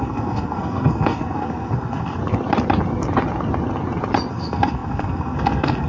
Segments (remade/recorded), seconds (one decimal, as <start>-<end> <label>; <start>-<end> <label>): 0.0-2.2 remade; 2.2-4.3 recorded; 4.3-5.9 remade